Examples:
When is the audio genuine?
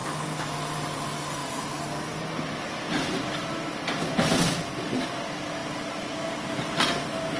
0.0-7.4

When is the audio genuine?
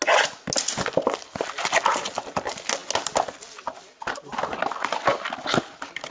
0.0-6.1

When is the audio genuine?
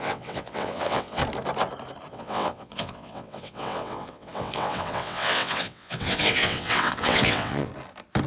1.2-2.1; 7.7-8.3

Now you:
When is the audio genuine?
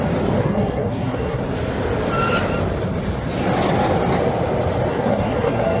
0.0-0.4; 1.4-4.9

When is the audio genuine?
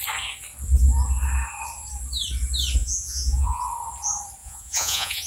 0.0-2.8; 3.6-4.4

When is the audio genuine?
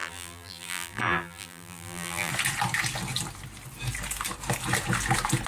2.3-5.5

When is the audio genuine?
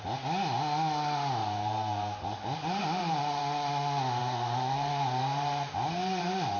0.0-1.4; 3.4-4.2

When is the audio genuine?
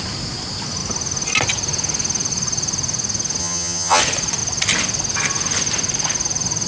0.0-3.4; 4.0-6.7